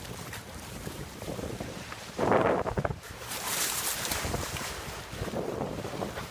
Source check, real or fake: fake